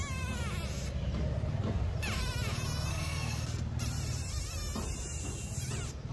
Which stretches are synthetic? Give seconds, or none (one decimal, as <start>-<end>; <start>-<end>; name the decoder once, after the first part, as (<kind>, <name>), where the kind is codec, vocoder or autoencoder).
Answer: 2.9-3.6 (codec, SNAC)